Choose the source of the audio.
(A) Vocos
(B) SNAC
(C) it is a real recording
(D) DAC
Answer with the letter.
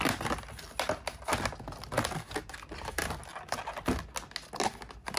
C